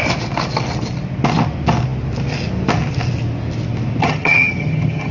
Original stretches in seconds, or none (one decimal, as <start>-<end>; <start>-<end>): 0.0-4.0